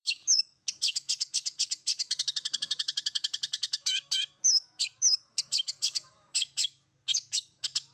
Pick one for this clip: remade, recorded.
remade